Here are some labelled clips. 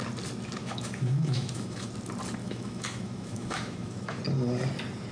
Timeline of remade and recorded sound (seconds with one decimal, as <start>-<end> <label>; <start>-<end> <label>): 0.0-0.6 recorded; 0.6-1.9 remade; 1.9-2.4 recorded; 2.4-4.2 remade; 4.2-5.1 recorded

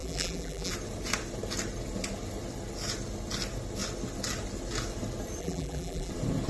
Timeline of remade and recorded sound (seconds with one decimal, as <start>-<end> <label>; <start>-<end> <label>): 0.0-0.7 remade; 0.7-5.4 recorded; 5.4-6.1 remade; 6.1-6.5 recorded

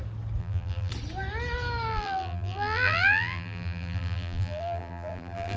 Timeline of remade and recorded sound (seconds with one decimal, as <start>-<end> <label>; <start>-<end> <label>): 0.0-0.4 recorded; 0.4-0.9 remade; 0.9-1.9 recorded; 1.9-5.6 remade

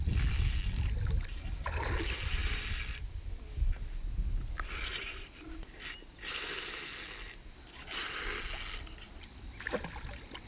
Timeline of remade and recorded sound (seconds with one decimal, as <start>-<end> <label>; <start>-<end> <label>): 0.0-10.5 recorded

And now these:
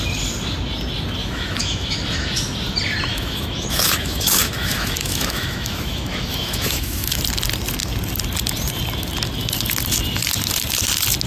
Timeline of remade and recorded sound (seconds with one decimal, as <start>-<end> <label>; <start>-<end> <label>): 0.0-1.2 recorded; 1.2-2.4 remade; 2.4-3.1 recorded; 3.1-7.2 remade; 7.2-11.3 recorded